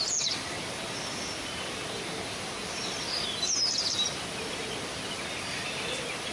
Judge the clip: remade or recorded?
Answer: recorded